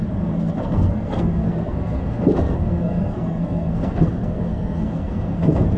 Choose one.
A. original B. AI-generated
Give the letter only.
B